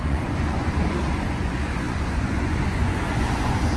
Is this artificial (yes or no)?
yes